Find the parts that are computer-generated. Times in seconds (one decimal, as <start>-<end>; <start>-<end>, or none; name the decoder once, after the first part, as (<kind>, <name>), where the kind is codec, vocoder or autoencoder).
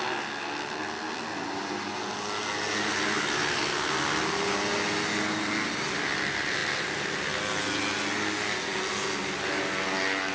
none